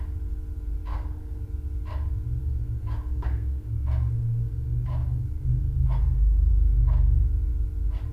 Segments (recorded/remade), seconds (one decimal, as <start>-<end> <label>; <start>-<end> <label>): 0.0-0.9 recorded; 0.9-1.5 remade; 1.5-2.4 recorded; 2.4-6.5 remade; 6.5-8.1 recorded